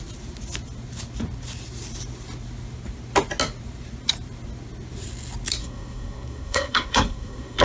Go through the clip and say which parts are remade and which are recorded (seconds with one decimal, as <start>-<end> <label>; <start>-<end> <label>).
0.0-5.6 recorded; 5.6-7.6 remade